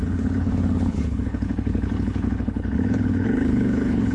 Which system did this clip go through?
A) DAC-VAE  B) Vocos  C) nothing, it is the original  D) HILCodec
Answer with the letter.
D